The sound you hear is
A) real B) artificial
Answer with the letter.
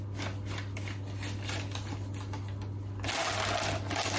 A